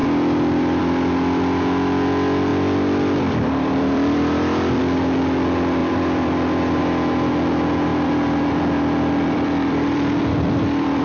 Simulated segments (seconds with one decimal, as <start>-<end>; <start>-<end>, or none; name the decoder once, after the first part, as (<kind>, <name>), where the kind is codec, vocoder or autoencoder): 0.0-0.8 (vocoder, BigVGAN v2); 2.5-4.8; 5.8-6.8; 7.9-11.0